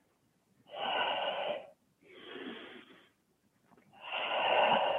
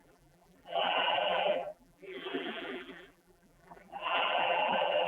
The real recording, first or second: first